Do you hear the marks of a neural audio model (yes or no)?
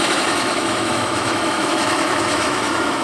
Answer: yes